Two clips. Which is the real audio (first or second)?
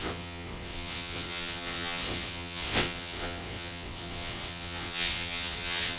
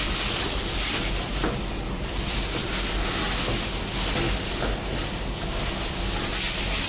second